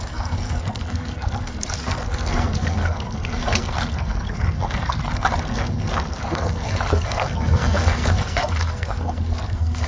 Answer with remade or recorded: remade